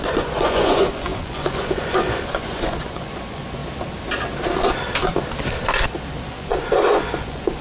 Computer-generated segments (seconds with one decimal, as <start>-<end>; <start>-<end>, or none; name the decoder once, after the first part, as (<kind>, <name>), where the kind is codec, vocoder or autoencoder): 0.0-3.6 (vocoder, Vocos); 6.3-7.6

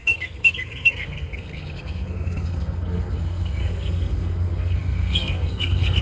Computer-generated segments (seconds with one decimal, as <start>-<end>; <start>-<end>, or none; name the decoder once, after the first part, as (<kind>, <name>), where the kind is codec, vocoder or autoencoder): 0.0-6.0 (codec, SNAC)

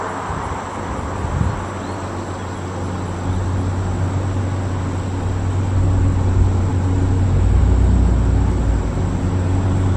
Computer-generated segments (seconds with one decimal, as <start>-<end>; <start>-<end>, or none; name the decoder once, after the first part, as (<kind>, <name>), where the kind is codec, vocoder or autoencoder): none

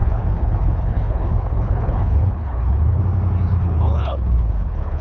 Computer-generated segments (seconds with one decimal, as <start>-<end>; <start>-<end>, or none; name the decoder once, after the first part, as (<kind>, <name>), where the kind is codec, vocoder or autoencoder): 0.0-3.0 (codec, HILCodec); 3.5-5.0

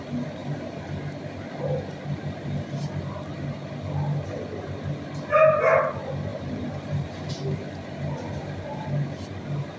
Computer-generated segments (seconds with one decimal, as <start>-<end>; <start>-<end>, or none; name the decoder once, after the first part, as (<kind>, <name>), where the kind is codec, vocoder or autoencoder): 6.3-7.3 (vocoder, BigVGAN v2)